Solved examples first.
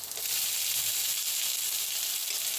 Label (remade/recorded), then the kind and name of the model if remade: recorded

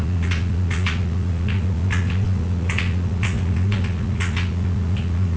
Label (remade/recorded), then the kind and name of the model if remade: remade, vocoder, Vocos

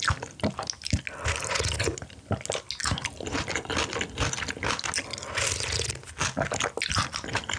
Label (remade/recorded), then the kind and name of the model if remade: recorded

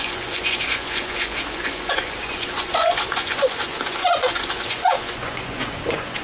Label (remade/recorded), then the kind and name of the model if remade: remade, vocoder, Vocos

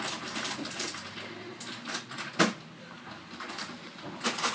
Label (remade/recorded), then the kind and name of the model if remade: recorded